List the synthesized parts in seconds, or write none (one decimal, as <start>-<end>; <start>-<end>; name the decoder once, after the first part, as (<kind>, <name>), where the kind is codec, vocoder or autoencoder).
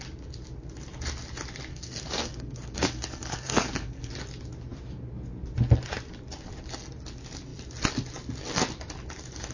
1.7-4.1 (codec, SNAC)